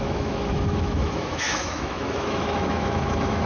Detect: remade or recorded remade